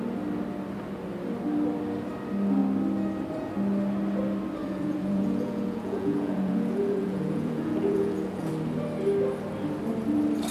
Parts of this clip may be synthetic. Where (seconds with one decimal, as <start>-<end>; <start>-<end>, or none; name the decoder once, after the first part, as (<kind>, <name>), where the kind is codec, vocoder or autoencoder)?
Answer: 4.6-8.5 (vocoder, Vocos)